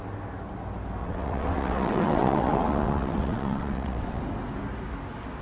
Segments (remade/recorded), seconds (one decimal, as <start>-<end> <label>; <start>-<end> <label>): 0.0-1.0 recorded; 1.0-4.2 remade; 4.2-5.4 recorded